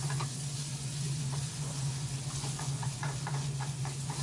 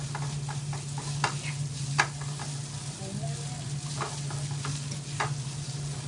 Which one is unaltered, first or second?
second